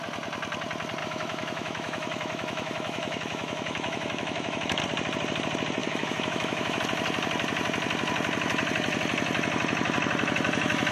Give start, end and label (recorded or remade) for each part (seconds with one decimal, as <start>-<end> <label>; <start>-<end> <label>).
0.0-1.0 recorded; 1.0-4.8 remade; 4.8-5.8 recorded; 5.8-6.8 remade; 6.8-10.9 recorded